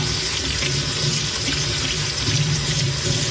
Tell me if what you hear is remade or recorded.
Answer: recorded